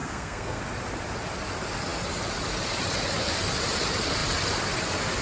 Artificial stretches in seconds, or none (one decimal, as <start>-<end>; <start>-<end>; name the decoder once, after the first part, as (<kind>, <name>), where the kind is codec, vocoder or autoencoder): 0.0-0.6 (codec, SNAC)